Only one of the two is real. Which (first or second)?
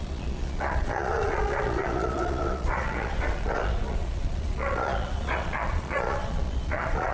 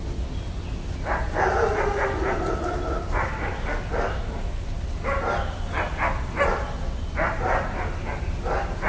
second